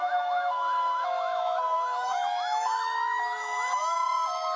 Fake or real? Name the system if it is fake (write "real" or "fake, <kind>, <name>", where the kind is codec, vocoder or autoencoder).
fake, autoencoder, DAC-VAE